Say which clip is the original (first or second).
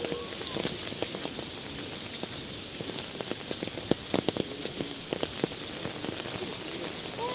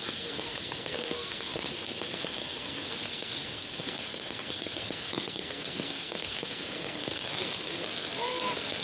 first